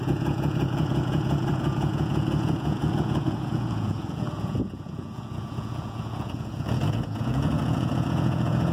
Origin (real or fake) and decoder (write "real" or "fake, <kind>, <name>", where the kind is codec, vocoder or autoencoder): fake, vocoder, Vocos